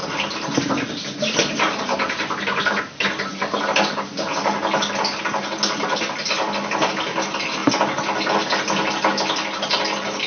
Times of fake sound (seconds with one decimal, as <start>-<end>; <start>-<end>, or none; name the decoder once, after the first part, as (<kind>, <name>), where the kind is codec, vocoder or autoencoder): none